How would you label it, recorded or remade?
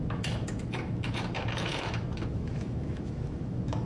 remade